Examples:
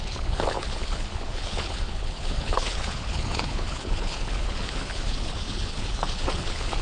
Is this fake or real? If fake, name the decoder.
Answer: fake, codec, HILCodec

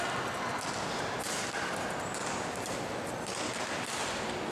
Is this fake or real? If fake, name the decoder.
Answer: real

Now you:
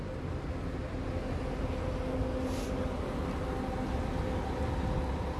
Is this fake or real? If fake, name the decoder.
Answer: real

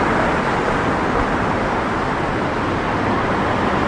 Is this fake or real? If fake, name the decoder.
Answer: fake, vocoder, BigVGAN v2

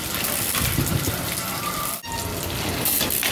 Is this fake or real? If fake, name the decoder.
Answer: real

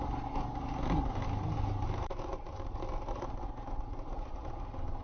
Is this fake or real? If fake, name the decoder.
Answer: real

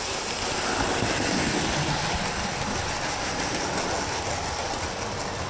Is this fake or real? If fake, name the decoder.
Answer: real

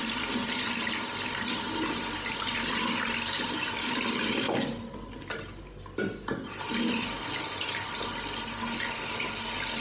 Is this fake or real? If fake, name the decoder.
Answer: real